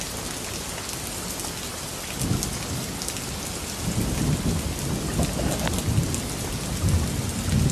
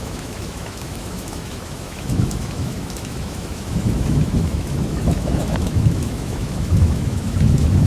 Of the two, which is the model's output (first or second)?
second